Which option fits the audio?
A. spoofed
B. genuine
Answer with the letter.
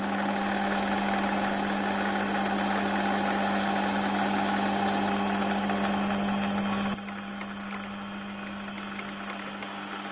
B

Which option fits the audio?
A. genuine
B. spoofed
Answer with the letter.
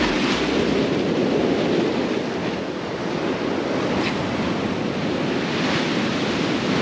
A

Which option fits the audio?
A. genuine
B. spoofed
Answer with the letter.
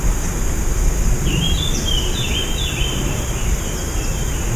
A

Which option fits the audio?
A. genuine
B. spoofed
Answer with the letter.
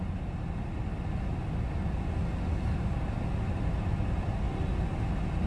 A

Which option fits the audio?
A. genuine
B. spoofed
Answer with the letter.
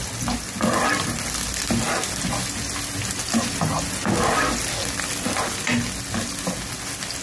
A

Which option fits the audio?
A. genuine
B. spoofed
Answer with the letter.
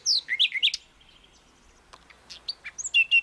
A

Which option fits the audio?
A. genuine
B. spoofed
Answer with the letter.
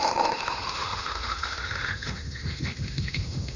B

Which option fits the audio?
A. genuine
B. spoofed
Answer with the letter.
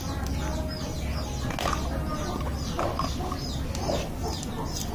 A